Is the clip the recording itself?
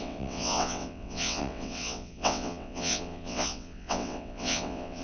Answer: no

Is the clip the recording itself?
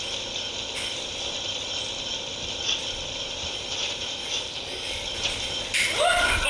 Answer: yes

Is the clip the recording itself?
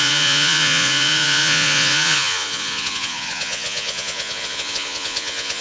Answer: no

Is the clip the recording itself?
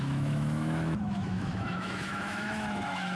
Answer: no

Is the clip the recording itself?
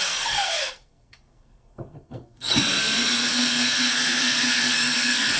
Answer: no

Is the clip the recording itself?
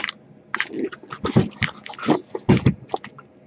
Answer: yes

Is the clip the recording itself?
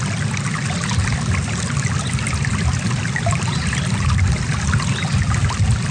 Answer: yes